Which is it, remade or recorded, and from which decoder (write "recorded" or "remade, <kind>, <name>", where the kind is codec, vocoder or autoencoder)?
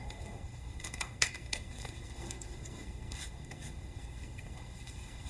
remade, codec, SNAC